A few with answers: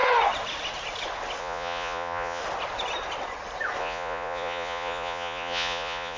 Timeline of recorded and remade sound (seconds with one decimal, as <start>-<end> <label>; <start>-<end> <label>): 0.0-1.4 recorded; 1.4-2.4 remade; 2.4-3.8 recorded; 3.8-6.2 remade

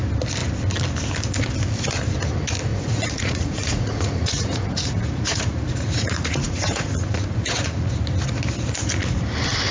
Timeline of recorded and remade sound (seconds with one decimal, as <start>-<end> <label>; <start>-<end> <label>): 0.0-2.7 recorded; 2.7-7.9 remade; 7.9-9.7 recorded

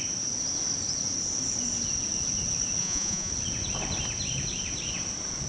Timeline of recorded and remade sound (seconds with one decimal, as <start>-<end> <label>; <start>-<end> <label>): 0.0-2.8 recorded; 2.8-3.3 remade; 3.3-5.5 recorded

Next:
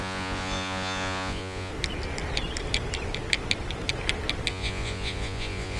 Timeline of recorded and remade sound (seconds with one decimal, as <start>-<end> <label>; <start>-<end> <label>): 0.0-1.7 remade; 1.7-4.5 recorded; 4.5-5.8 remade